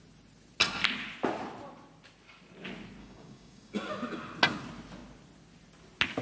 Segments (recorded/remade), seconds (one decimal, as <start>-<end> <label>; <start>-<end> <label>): 0.0-3.0 recorded; 3.0-3.9 remade; 3.9-6.2 recorded